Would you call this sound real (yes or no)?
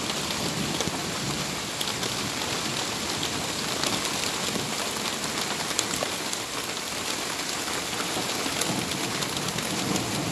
yes